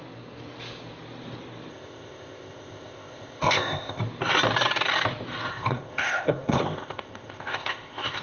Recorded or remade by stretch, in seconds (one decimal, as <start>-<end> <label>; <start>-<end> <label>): 0.0-1.7 recorded; 1.7-4.0 remade; 4.0-5.5 recorded; 5.5-8.2 remade